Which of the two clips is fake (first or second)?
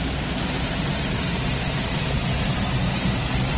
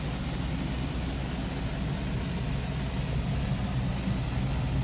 first